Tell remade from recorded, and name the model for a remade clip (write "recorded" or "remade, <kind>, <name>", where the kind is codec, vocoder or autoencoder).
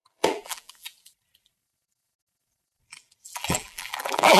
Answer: remade, vocoder, BigVGAN v2